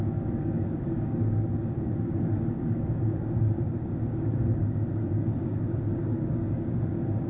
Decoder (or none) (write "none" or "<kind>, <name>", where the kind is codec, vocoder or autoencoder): codec, DAC